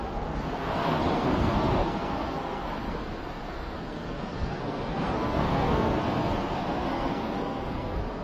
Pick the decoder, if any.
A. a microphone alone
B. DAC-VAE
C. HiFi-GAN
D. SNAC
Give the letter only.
D